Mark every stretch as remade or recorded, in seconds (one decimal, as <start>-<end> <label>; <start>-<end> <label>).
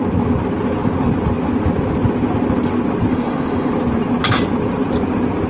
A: 0.0-3.1 recorded; 3.1-3.7 remade; 3.7-5.5 recorded